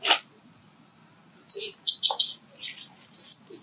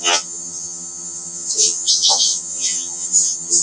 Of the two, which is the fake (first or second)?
second